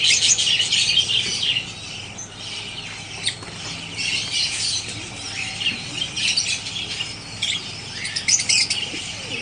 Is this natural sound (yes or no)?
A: yes